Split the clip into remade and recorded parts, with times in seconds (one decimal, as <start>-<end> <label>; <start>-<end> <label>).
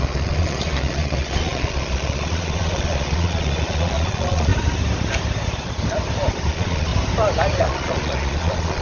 0.0-4.5 remade; 4.5-6.5 recorded; 6.5-6.9 remade; 6.9-7.6 recorded; 7.6-8.8 remade